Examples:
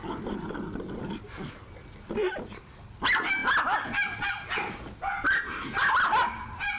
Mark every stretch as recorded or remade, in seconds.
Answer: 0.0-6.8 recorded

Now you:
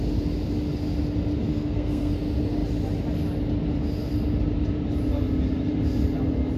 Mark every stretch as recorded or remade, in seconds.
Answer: 0.0-1.5 recorded; 1.5-2.1 remade; 2.1-6.6 recorded

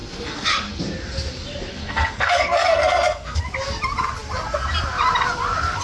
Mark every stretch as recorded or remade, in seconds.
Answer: 0.0-0.8 remade; 0.8-1.7 recorded; 1.7-3.4 remade; 3.4-5.8 recorded

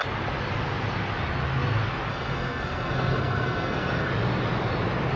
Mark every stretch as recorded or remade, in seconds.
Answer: 0.0-2.1 recorded; 2.1-4.1 remade; 4.1-5.2 recorded

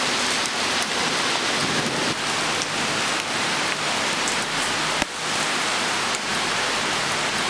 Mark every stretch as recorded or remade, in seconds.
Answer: 0.0-7.5 recorded

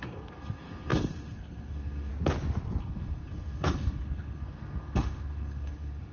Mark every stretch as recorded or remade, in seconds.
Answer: 0.0-2.1 remade; 2.1-2.8 recorded; 2.8-6.1 remade

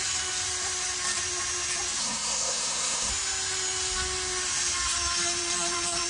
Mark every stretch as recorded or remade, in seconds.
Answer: 0.0-2.0 recorded; 2.0-3.1 remade; 3.1-6.1 recorded